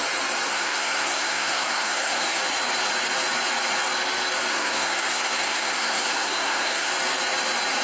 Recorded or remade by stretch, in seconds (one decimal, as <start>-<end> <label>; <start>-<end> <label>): 0.0-0.5 recorded; 0.5-2.4 remade; 2.4-4.5 recorded; 4.5-6.9 remade; 6.9-7.8 recorded

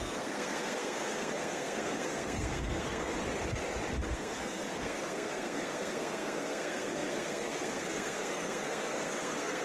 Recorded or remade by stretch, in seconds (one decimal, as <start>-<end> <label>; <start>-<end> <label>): 0.0-3.1 remade; 3.1-4.1 recorded; 4.1-9.6 remade

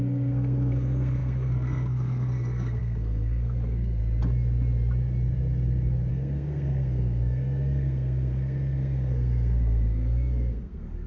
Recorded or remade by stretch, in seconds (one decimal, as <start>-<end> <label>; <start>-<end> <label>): 0.0-4.0 remade; 4.0-6.1 recorded; 6.1-11.1 remade

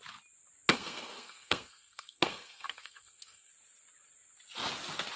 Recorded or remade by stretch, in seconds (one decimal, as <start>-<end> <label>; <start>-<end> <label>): 0.0-0.7 recorded; 0.7-3.5 remade; 3.5-5.2 recorded

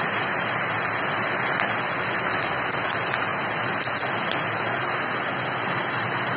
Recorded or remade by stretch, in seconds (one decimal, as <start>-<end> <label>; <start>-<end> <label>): 0.0-6.4 recorded